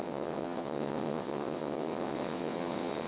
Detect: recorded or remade remade